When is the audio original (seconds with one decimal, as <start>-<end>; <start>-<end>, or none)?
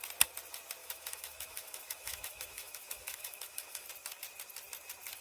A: 0.0-0.8; 3.9-5.2